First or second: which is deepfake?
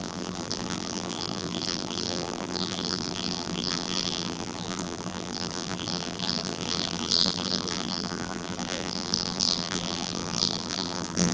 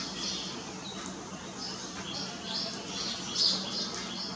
first